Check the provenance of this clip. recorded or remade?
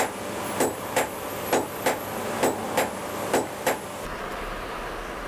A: recorded